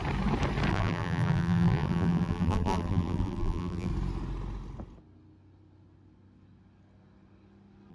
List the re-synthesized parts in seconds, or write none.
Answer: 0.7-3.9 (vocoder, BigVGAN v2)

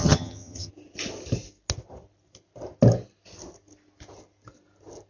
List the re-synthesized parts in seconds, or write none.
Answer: 0.0-0.7 (vocoder, HiFi-GAN)